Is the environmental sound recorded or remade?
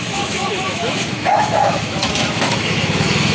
remade